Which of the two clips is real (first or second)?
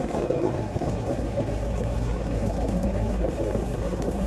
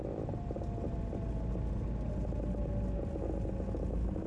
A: second